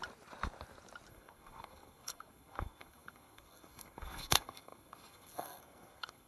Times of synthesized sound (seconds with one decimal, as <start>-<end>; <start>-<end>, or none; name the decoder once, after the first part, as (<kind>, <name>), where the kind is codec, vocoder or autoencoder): 1.1-6.3 (codec, SNAC)